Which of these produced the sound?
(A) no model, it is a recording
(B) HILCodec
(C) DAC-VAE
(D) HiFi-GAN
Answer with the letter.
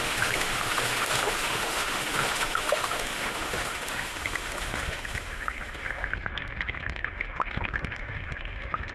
C